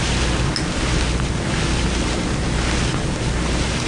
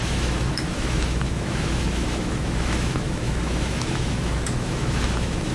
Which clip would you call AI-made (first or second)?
second